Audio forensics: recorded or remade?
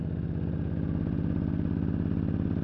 recorded